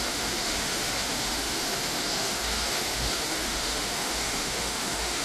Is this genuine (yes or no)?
no